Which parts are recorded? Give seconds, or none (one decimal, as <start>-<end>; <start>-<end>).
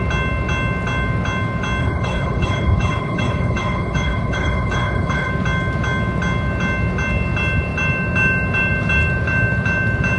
0.0-1.8; 5.3-10.2